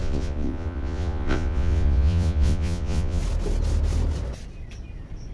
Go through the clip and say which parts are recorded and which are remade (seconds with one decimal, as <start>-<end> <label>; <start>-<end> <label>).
0.0-3.2 remade; 3.2-5.3 recorded